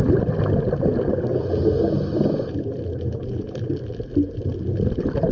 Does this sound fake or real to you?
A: real